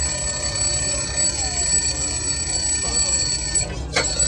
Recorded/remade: recorded